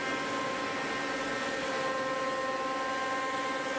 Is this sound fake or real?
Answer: real